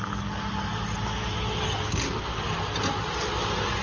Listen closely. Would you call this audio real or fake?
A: real